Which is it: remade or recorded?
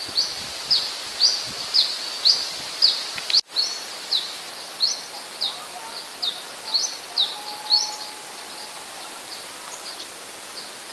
recorded